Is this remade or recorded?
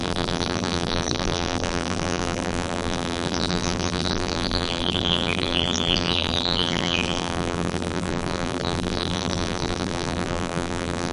remade